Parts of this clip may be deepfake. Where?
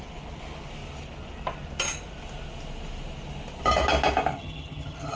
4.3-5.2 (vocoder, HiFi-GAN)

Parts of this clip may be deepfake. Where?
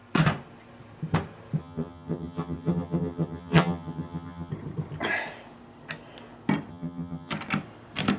1.6-4.5 (vocoder, HiFi-GAN); 6.7-7.3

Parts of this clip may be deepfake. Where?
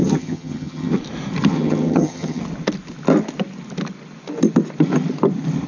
0.0-1.0 (vocoder, HiFi-GAN); 1.5-2.4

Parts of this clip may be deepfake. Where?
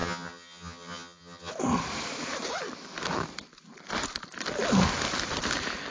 0.0-1.5 (vocoder, HiFi-GAN)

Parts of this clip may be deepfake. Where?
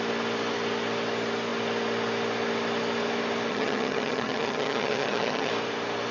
3.5-5.5 (vocoder, HiFi-GAN)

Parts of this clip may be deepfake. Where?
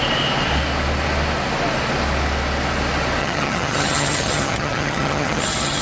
3.2-5.8 (vocoder, HiFi-GAN)